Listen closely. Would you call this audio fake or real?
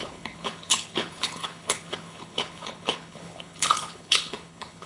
fake